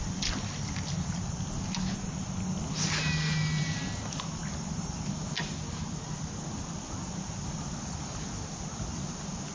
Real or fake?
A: real